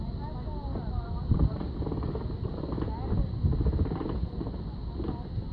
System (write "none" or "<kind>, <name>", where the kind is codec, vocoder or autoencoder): none